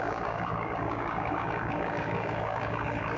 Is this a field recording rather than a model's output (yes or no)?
no